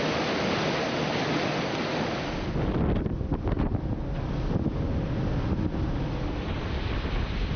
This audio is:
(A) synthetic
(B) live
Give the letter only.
B